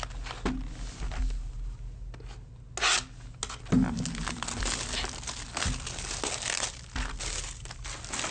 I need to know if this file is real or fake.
real